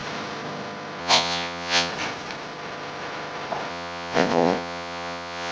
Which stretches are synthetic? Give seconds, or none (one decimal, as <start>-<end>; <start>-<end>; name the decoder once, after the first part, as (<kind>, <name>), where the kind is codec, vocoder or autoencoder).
1.0-1.9 (vocoder, Vocos); 3.7-5.5